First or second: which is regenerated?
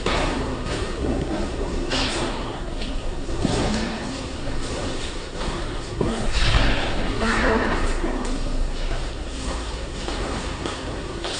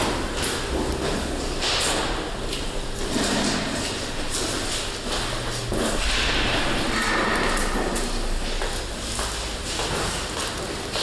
first